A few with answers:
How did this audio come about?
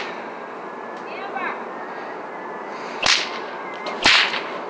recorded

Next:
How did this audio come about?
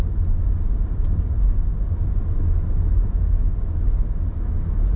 recorded